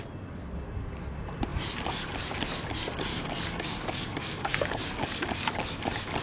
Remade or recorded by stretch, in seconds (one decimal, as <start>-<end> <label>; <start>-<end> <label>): 0.0-3.1 recorded; 3.1-5.7 remade; 5.7-6.2 recorded